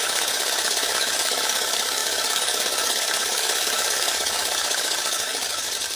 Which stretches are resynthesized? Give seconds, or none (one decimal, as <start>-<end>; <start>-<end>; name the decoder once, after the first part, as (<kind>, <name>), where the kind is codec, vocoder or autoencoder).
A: 0.0-6.0 (codec, DAC)